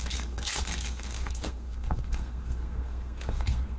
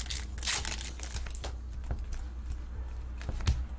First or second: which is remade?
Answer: first